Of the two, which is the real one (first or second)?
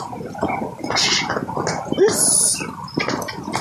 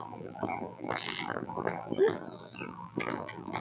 first